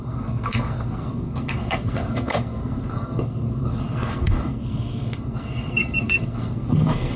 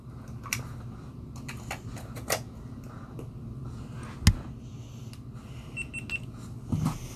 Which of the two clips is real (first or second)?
second